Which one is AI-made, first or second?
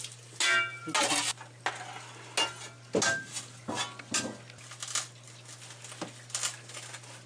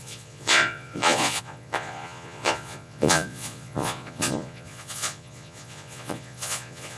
second